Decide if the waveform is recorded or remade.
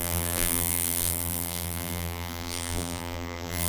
remade